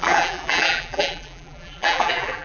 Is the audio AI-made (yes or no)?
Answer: yes